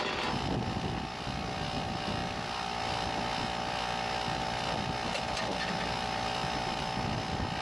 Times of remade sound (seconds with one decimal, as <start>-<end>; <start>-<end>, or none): none